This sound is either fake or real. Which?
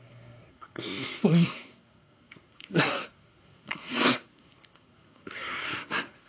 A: fake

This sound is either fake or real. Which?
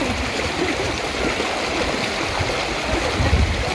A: real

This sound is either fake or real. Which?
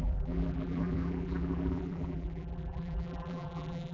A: fake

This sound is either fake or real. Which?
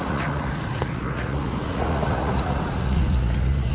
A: fake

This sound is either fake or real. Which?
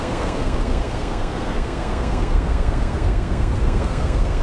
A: fake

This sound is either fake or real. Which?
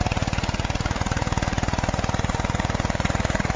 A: fake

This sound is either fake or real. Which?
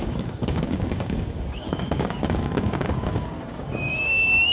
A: fake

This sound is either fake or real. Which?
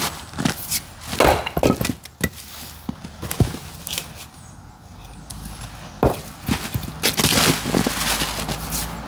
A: real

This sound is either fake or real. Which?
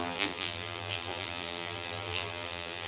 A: fake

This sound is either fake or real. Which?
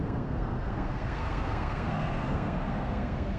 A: fake